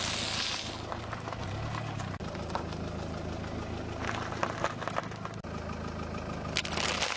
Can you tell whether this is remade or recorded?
recorded